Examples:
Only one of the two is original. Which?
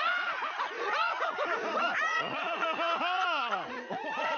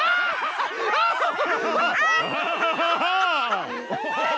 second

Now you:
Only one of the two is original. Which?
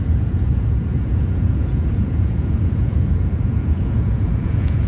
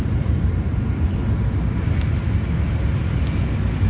second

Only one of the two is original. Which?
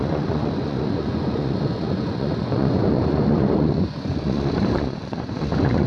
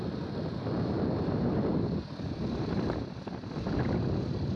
second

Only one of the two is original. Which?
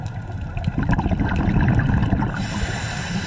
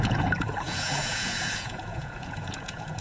first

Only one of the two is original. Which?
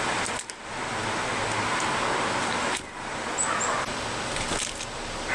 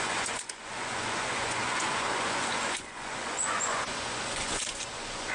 first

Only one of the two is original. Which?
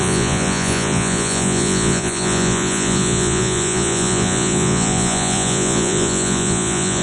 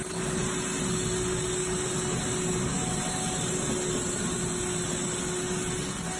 second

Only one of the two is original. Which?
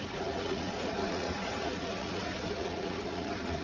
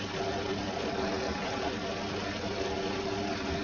second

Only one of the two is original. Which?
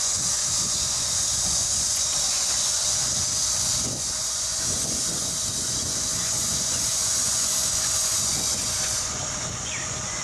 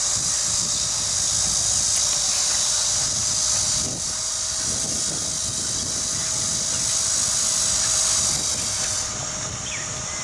second